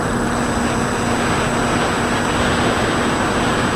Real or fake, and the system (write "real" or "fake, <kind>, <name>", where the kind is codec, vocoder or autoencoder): real